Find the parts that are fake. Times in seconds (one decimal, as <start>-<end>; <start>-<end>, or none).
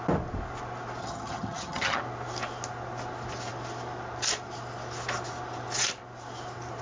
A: 1.0-2.0